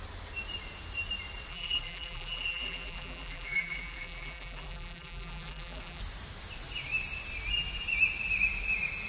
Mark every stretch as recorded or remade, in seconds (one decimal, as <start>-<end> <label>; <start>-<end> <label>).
0.0-1.5 recorded; 1.5-6.0 remade; 6.0-9.1 recorded